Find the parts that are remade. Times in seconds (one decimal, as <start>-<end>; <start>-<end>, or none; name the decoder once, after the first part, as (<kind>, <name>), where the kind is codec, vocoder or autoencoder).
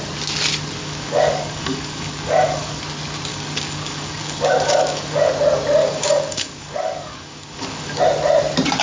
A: 0.8-2.8 (codec, DAC); 3.3-5.3; 5.8-8.0